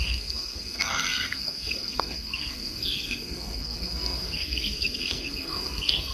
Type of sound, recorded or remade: remade